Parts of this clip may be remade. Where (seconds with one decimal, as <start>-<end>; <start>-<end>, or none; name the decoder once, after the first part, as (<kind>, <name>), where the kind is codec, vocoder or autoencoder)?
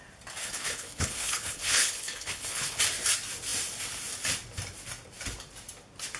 0.4-2.8 (codec, HILCodec)